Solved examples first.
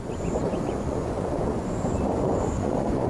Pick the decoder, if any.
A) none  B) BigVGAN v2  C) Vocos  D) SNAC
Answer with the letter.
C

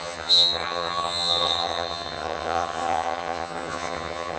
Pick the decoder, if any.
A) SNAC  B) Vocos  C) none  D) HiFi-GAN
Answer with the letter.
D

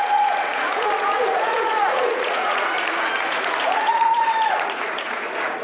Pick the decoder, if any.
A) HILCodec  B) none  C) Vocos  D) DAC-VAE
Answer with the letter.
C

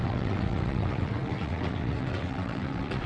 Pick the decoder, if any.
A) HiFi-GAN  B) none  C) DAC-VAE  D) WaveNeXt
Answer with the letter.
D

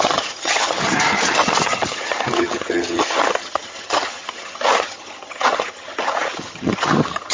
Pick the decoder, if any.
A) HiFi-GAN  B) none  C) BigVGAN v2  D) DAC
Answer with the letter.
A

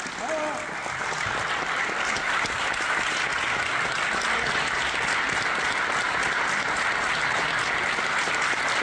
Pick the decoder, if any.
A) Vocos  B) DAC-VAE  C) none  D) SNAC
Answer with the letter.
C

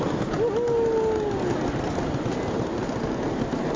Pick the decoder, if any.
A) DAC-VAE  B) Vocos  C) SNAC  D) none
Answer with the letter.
D